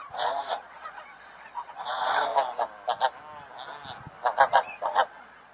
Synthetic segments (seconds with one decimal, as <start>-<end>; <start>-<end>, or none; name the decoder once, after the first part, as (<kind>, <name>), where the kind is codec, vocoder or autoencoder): 0.0-2.3 (vocoder, Vocos); 4.5-5.5